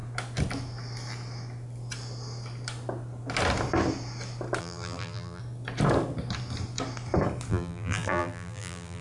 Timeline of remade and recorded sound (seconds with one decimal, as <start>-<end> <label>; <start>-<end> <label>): 0.0-4.6 recorded; 4.6-5.4 remade; 5.4-7.5 recorded; 7.5-9.0 remade